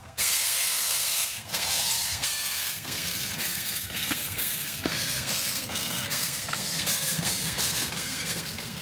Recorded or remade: remade